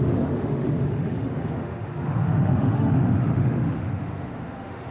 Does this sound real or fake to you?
fake